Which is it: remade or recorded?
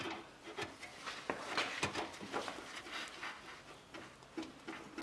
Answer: recorded